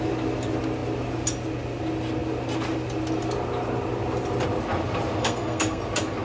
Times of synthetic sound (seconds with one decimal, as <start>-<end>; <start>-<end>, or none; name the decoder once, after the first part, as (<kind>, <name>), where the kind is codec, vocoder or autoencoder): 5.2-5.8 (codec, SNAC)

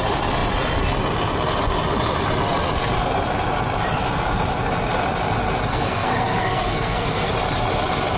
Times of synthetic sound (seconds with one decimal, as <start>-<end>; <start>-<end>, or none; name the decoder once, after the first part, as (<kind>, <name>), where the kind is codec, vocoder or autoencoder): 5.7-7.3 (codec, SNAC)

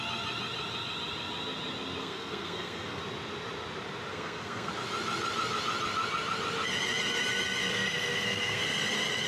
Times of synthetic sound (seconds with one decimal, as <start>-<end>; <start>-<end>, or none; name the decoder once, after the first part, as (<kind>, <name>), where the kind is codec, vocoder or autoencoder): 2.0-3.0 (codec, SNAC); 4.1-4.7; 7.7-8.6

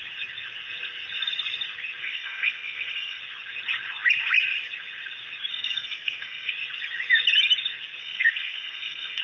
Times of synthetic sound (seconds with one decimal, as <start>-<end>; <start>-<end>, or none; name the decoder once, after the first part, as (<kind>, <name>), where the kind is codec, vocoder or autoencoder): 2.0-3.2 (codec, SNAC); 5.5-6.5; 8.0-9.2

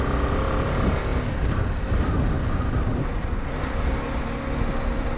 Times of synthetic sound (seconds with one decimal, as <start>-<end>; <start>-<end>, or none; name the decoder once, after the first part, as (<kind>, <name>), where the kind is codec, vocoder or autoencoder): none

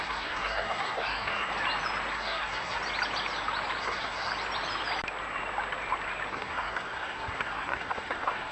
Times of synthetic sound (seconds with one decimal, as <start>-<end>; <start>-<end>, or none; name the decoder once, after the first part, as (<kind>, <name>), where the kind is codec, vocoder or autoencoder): 0.0-1.5 (codec, SNAC); 2.1-2.8; 3.8-4.3; 6.3-8.5

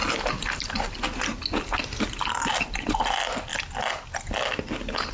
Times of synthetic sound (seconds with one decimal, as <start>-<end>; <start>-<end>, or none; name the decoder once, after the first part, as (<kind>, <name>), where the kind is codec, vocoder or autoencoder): none

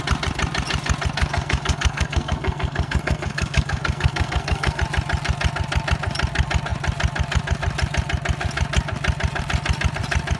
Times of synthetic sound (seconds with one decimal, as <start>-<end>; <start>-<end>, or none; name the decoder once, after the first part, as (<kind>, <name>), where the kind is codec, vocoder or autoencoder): 1.2-4.8 (codec, SNAC)